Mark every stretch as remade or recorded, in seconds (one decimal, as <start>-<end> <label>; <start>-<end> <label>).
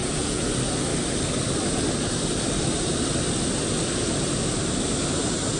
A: 0.0-0.5 remade; 0.5-5.6 recorded